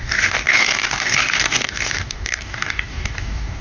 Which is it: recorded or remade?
remade